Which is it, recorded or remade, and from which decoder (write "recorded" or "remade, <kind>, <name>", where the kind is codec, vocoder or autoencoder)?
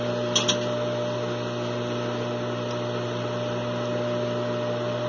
recorded